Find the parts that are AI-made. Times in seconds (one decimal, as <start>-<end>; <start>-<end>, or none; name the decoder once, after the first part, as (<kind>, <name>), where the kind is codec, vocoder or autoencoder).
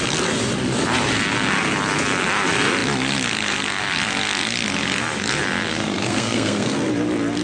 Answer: 5.7-6.9 (codec, SNAC)